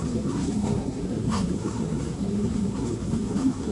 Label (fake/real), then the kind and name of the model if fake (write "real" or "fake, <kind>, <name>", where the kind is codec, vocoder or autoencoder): fake, codec, SNAC